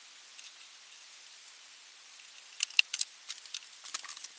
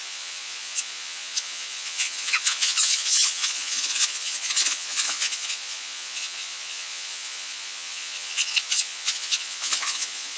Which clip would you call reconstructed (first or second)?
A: second